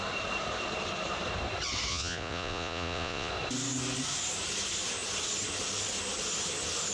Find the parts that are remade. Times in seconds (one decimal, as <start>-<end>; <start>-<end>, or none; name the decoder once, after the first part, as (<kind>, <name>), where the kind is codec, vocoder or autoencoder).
1.9-3.3 (vocoder, Vocos)